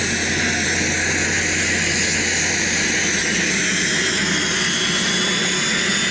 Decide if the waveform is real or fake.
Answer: real